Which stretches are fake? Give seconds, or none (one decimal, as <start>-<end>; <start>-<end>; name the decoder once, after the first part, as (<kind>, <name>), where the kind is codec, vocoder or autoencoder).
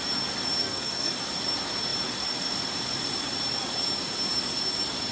0.6-1.1 (codec, SNAC)